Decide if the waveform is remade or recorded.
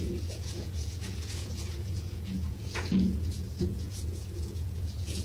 remade